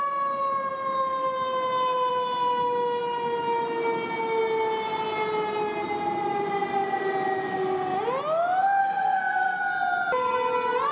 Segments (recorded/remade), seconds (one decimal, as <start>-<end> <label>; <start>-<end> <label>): 0.0-8.8 recorded; 8.8-9.6 remade; 9.6-10.9 recorded